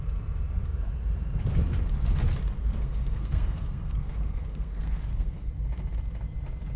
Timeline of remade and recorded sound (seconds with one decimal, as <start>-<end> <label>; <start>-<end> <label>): 0.0-2.6 recorded; 2.6-5.5 remade; 5.5-6.8 recorded